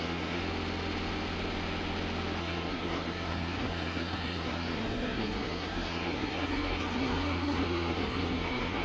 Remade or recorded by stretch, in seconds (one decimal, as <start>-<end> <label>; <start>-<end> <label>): 0.0-0.4 remade; 0.4-2.4 recorded; 2.4-8.8 remade